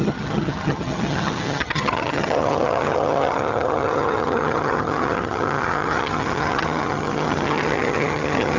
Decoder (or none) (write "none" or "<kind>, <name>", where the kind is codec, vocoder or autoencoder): vocoder, HiFi-GAN